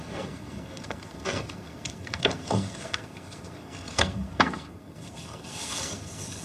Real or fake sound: fake